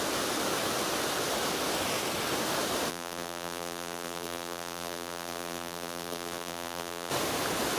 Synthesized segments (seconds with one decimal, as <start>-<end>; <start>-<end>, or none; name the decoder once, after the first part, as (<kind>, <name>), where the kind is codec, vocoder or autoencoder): 2.9-7.1 (vocoder, BigVGAN v2)